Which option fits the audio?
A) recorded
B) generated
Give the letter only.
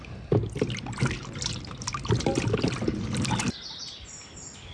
A